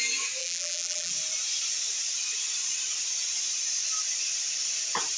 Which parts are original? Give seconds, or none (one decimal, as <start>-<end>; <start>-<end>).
0.0-0.4; 1.1-5.2